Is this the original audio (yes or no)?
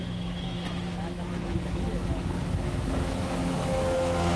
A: no